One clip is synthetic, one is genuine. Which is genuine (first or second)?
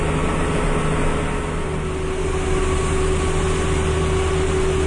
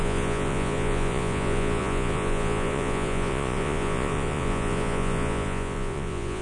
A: first